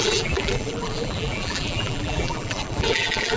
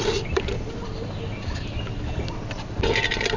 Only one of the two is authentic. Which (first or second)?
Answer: second